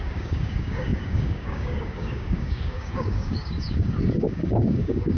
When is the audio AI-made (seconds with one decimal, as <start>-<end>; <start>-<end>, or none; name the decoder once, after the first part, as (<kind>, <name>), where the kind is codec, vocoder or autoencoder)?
0.0-5.2 (codec, DAC)